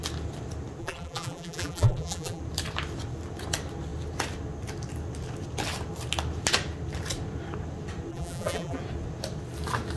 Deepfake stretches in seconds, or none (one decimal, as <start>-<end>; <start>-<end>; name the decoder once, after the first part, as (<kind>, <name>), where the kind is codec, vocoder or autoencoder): 0.8-2.4 (vocoder, BigVGAN v2); 8.1-8.8